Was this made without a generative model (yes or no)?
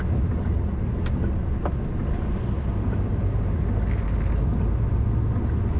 yes